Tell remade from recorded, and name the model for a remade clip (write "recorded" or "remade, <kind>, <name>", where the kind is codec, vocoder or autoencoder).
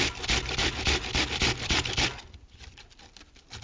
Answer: recorded